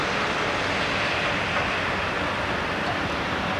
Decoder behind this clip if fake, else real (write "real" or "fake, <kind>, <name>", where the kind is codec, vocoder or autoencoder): real